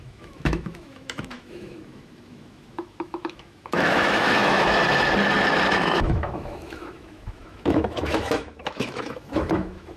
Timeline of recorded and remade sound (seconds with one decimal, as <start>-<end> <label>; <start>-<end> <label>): 0.0-4.8 remade; 4.8-5.7 recorded; 5.7-10.0 remade

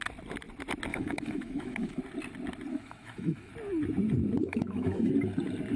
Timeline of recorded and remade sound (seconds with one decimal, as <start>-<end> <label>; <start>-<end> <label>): 0.0-0.9 recorded; 0.9-2.0 remade; 2.0-2.7 recorded; 2.7-3.5 remade; 3.5-4.4 recorded; 4.4-5.1 remade; 5.1-5.8 recorded